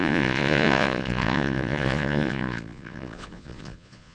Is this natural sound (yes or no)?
no